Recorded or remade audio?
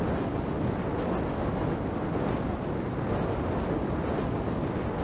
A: recorded